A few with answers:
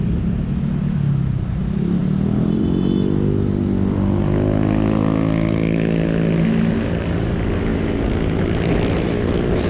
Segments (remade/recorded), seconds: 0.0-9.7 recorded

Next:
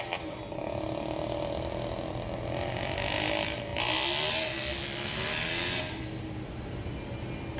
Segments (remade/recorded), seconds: 0.0-7.6 recorded

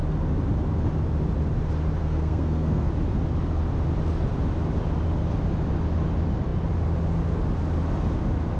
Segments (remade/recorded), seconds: 0.0-2.0 recorded; 2.0-2.9 remade; 2.9-8.6 recorded

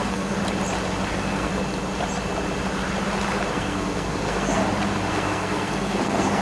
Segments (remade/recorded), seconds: 0.0-0.4 remade; 0.4-1.1 recorded; 1.1-1.5 remade; 1.5-3.5 recorded; 3.5-4.6 remade; 4.6-5.1 recorded; 5.1-6.4 remade

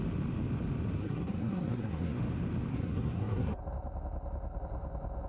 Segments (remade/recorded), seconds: 0.0-1.0 recorded; 1.0-2.2 remade; 2.2-2.7 recorded; 2.7-3.6 remade; 3.6-5.3 recorded

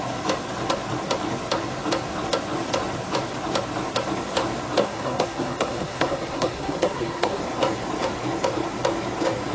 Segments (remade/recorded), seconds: 0.0-4.8 recorded; 4.8-7.4 remade; 7.4-9.5 recorded

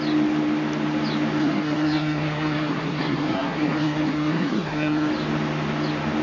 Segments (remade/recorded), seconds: 0.0-1.4 recorded; 1.4-5.1 remade; 5.1-6.2 recorded